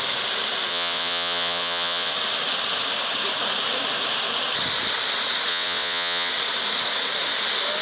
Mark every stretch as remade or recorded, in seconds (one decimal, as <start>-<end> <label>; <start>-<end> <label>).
0.0-0.7 recorded; 0.7-2.1 remade; 2.1-5.5 recorded; 5.5-6.3 remade; 6.3-7.8 recorded

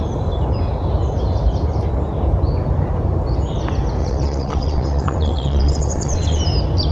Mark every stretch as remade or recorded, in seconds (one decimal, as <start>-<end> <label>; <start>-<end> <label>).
0.0-4.0 recorded; 4.0-6.4 remade; 6.4-6.9 recorded